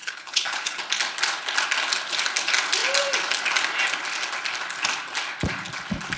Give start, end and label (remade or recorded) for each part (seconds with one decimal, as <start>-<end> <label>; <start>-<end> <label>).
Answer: 0.0-0.8 remade; 0.8-6.2 recorded